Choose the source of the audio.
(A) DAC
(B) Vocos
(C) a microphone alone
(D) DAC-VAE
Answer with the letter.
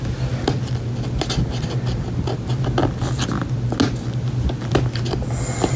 C